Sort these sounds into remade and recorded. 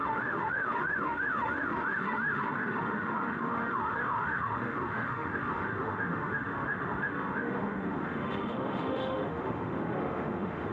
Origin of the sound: remade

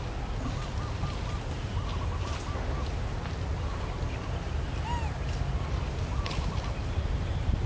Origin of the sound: recorded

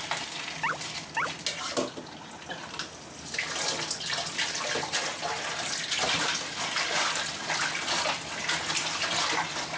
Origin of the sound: recorded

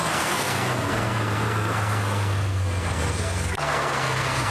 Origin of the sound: remade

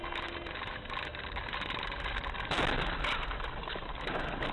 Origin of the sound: recorded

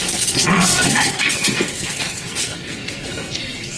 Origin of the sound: remade